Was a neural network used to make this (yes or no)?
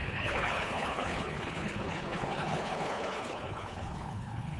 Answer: yes